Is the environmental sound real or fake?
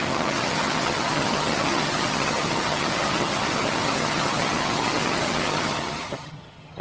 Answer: fake